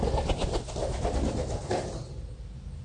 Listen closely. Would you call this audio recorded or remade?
recorded